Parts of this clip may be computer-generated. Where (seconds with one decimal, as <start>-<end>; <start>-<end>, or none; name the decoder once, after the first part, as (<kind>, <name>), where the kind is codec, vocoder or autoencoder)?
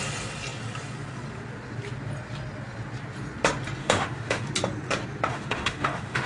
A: 3.8-4.5 (autoencoder, DAC-VAE); 5.3-6.3